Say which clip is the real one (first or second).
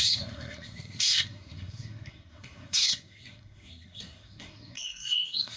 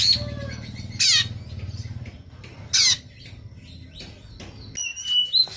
second